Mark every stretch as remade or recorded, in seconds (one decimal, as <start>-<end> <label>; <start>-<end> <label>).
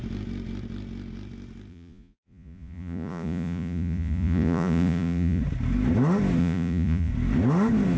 0.0-1.7 recorded; 1.7-5.4 remade; 5.4-6.4 recorded; 6.4-7.1 remade; 7.1-8.0 recorded